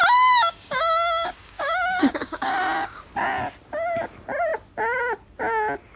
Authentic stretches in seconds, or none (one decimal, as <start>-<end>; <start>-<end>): 2.5-6.0